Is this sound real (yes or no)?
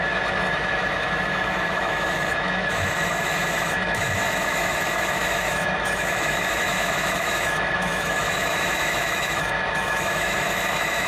no